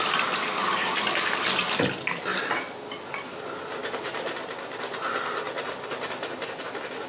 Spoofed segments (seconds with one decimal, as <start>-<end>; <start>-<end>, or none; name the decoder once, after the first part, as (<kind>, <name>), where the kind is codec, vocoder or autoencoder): none